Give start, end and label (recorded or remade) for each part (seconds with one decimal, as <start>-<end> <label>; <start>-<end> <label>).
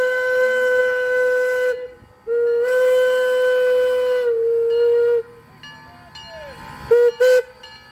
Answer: 0.0-7.9 recorded